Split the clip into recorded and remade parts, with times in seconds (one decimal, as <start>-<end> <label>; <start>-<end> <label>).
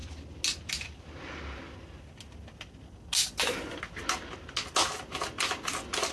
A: 0.0-6.1 recorded